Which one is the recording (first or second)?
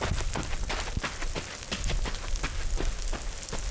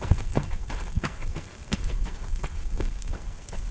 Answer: first